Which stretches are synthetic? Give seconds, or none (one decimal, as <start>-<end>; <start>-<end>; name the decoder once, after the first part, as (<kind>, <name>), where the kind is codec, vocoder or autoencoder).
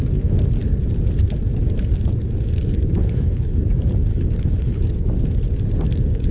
3.0-3.6 (codec, HILCodec); 4.1-4.8